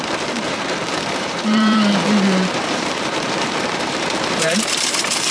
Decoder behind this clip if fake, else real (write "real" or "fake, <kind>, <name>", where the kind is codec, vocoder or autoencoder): fake, vocoder, BigVGAN v2